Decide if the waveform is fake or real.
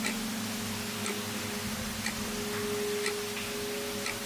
real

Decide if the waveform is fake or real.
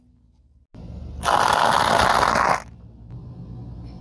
real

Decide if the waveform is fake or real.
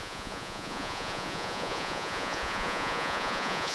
fake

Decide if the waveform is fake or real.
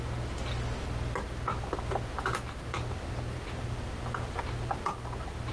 real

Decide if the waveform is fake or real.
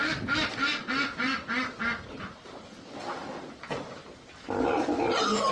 real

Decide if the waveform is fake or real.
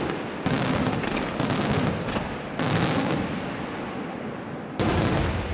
real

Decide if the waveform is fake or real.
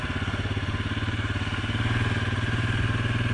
real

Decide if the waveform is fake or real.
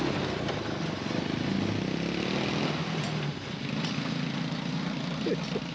real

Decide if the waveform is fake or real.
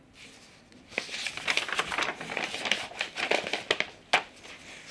real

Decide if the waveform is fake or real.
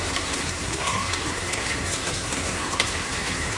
fake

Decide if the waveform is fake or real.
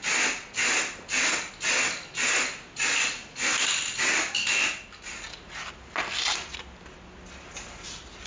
real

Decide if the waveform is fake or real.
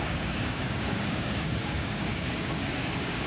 fake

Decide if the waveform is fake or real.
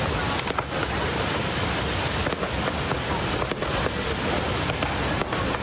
real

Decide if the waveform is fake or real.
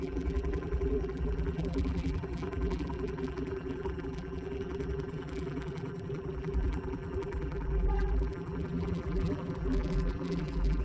fake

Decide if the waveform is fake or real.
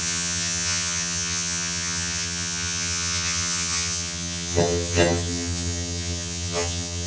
fake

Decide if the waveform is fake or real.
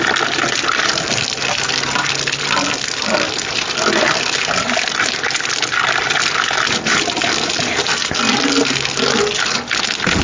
real